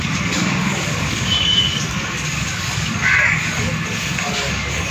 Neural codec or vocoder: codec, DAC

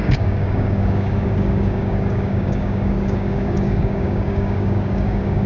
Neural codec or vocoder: codec, DAC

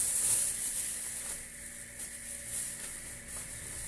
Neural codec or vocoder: none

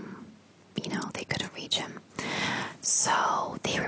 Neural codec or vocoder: none